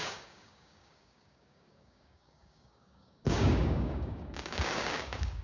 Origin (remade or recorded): remade